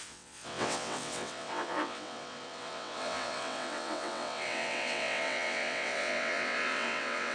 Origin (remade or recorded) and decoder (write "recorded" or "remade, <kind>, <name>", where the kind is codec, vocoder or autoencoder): remade, vocoder, WaveNeXt